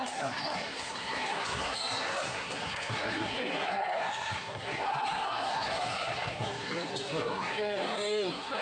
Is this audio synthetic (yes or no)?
yes